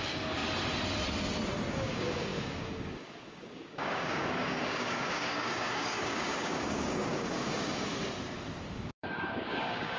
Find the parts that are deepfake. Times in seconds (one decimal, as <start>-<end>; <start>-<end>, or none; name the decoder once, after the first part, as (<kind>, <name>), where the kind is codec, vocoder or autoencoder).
0.0-0.4 (codec, DAC); 1.7-7.9; 8.7-10.0